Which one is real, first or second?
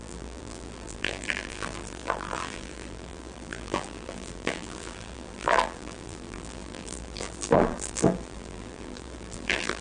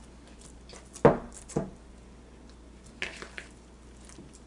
second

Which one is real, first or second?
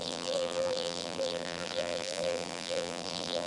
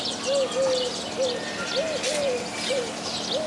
second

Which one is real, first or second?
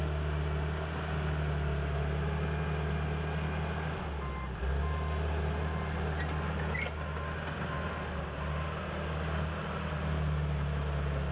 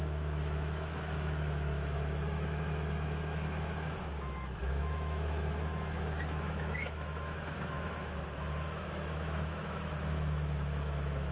first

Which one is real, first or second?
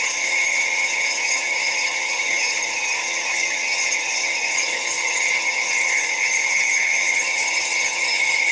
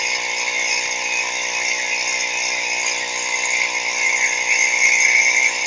second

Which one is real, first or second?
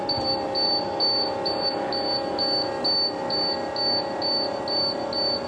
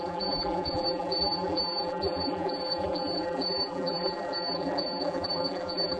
first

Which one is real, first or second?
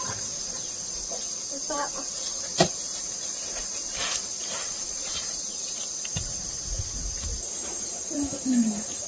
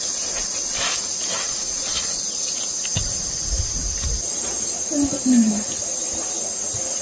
second